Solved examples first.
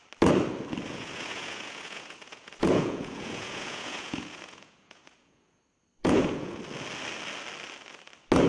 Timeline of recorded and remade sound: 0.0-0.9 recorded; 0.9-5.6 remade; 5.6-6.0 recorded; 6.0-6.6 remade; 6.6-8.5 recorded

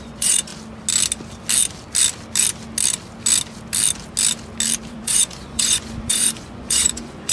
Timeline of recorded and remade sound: 0.0-0.5 remade; 0.5-4.9 recorded; 4.9-7.3 remade

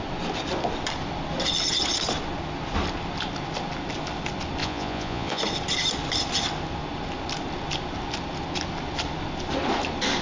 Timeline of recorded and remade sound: 0.0-4.6 recorded; 4.6-5.4 remade; 5.4-10.2 recorded